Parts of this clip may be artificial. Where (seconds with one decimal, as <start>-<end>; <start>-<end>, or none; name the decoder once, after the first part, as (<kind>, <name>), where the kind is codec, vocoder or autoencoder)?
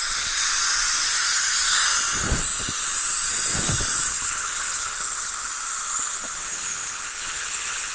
4.1-5.5 (codec, HILCodec); 6.3-7.9